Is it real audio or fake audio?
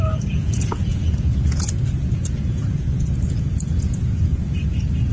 fake